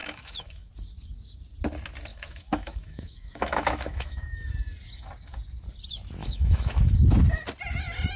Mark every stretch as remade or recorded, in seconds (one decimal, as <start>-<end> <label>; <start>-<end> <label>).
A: 0.0-0.7 remade; 0.7-2.1 recorded; 2.1-4.5 remade; 4.5-6.2 recorded; 6.2-6.8 remade; 6.8-8.2 recorded